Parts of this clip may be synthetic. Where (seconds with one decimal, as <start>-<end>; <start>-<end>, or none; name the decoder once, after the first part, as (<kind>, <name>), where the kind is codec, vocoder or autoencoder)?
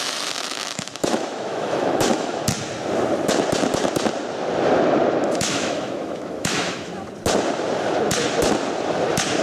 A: 0.0-2.4 (autoencoder, DAC-VAE); 5.2-6.9